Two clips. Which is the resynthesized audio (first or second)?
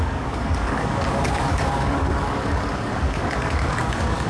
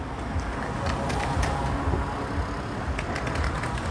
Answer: first